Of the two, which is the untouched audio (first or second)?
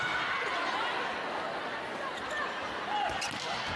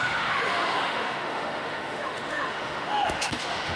first